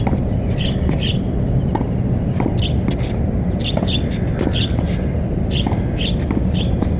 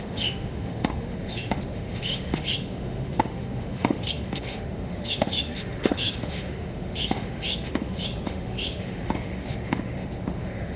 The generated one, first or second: second